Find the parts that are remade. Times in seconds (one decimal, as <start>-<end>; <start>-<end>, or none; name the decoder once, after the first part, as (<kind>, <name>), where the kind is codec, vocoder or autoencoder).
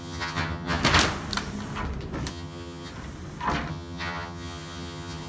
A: 0.0-0.8 (vocoder, HiFi-GAN); 2.3-2.9; 3.7-5.3